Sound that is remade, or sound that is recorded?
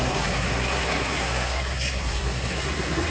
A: remade